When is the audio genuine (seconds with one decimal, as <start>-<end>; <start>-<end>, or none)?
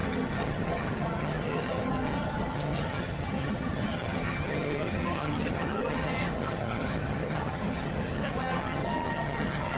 none